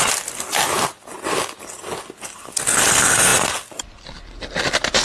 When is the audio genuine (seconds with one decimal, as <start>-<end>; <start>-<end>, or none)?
0.0-5.0